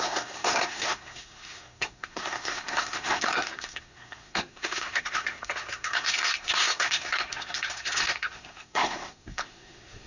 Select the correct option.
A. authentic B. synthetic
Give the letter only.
B